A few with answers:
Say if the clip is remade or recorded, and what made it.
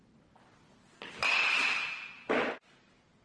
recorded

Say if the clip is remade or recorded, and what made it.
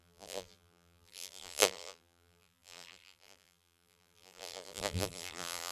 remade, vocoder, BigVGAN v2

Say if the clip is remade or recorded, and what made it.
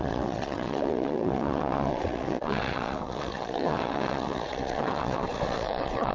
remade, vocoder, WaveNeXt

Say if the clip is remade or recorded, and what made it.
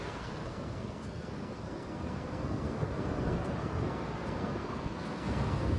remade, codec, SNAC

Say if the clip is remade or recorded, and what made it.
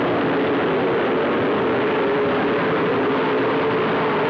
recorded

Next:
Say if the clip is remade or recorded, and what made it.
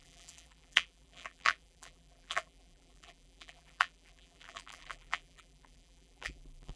remade, vocoder, BigVGAN v2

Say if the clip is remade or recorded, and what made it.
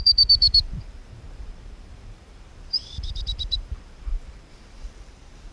remade, vocoder, BigVGAN v2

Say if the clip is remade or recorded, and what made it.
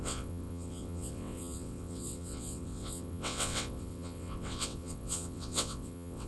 remade, vocoder, WaveNeXt